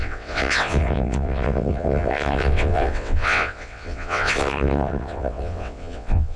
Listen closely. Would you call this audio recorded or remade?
remade